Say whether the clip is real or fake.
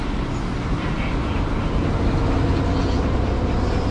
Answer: real